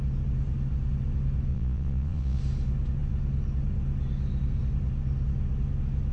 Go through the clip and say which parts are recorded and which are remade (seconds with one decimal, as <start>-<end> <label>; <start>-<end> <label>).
0.0-1.5 recorded; 1.5-2.4 remade; 2.4-6.1 recorded